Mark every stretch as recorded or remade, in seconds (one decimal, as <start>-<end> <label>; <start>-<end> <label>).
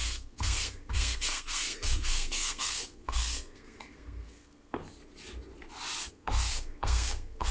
0.0-4.8 remade; 4.8-6.1 recorded; 6.1-7.5 remade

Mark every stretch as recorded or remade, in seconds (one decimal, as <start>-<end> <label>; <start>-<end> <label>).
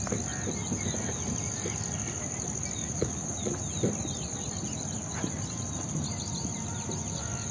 0.0-2.8 recorded; 2.8-3.6 remade; 3.6-7.5 recorded